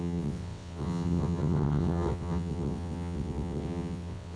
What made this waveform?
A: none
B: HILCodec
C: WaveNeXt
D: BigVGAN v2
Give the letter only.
C